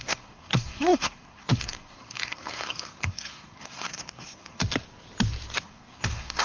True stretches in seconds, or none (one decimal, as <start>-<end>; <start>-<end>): 4.6-5.6